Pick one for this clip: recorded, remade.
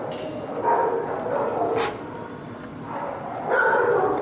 recorded